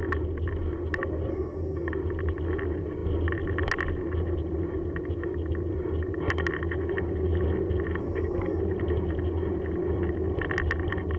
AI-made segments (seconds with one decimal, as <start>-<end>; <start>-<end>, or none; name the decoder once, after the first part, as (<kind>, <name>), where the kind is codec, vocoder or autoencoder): 1.3-1.9 (codec, SNAC); 8.0-8.6